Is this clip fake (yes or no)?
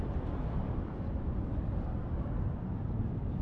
no